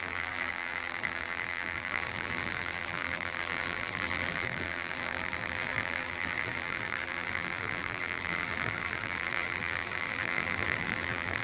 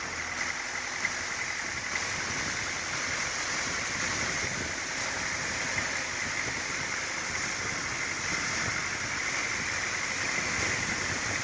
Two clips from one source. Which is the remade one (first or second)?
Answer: first